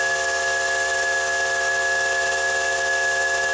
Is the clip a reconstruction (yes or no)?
no